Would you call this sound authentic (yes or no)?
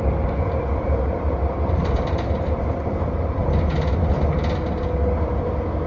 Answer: yes